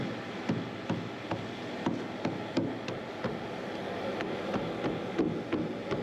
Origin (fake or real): real